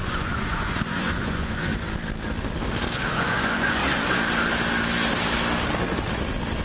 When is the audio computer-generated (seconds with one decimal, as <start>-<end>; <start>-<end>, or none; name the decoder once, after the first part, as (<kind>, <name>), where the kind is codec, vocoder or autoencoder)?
0.0-1.7 (vocoder, Vocos); 3.1-3.8